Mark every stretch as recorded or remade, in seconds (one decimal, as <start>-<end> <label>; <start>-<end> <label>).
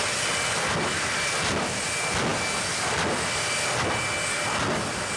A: 0.0-5.2 recorded